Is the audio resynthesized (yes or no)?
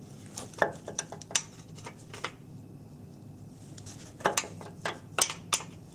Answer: no